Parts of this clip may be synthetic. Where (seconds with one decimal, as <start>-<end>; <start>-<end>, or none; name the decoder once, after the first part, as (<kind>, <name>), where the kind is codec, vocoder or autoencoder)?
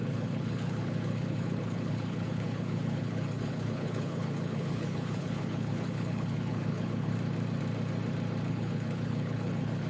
0.0-7.1 (codec, HILCodec); 8.5-9.9